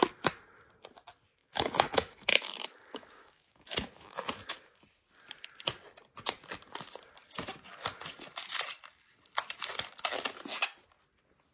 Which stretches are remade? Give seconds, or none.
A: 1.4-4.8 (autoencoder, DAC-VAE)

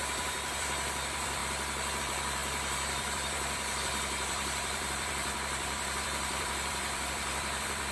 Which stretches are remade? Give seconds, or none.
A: 0.0-1.4 (vocoder, BigVGAN v2); 2.0-7.9

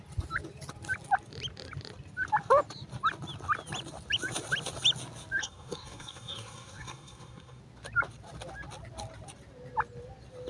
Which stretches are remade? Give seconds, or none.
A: 5.4-7.6 (codec, SNAC)